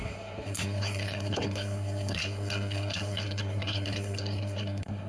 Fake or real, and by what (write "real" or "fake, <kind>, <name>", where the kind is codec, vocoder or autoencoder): fake, codec, SNAC